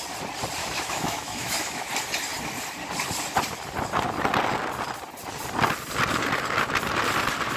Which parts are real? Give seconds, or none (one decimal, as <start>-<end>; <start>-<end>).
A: 0.0-0.6; 1.9-7.6